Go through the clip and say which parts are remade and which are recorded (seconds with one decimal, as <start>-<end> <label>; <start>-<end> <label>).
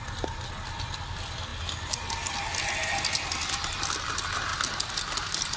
0.0-5.6 recorded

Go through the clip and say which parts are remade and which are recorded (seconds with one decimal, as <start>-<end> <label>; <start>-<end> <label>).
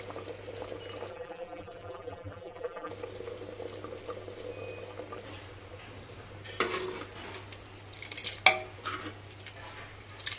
0.0-1.1 recorded; 1.1-2.9 remade; 2.9-10.4 recorded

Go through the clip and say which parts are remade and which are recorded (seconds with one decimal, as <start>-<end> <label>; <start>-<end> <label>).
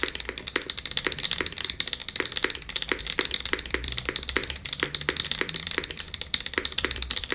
0.0-2.0 remade; 2.0-3.0 recorded; 3.0-7.3 remade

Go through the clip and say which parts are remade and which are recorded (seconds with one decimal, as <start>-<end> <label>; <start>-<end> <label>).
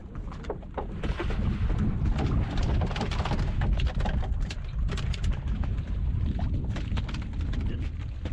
0.0-8.3 recorded